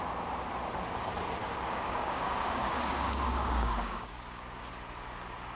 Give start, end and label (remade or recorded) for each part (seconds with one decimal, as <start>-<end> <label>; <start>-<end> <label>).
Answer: 0.0-1.4 recorded; 1.4-4.7 remade; 4.7-5.5 recorded